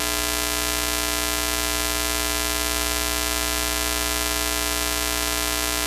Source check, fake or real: real